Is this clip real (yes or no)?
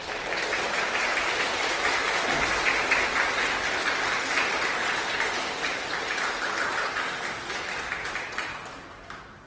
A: yes